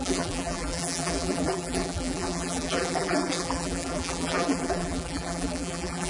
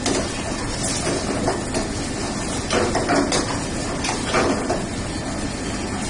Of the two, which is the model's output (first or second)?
first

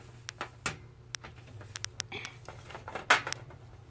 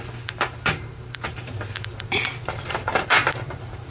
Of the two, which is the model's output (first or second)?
second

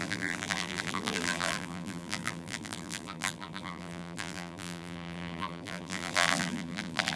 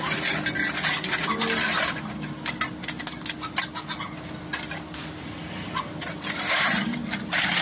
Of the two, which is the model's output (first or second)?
first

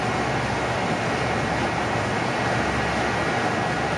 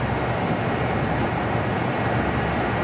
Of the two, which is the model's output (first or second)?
second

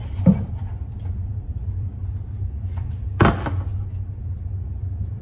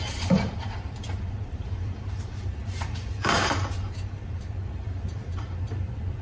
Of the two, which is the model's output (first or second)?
second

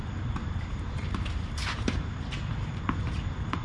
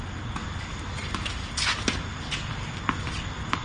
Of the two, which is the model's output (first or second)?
first